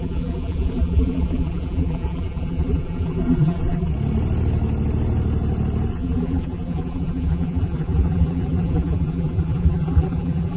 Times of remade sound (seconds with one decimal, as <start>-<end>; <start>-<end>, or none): 0.0-3.9; 5.9-10.6